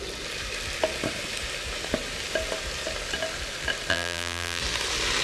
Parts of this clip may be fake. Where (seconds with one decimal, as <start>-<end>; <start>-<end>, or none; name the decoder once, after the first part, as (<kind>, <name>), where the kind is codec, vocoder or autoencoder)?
3.9-4.6 (vocoder, BigVGAN v2)